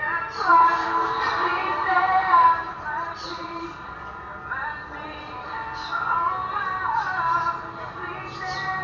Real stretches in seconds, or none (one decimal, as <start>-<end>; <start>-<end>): 0.0-0.5; 3.7-8.8